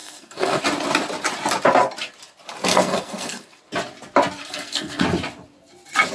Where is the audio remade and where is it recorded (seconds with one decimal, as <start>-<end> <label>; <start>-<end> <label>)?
0.0-0.6 remade; 0.6-2.7 recorded; 2.7-3.6 remade; 3.6-4.4 recorded; 4.4-5.0 remade; 5.0-6.1 recorded